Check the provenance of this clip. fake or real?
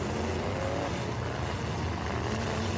real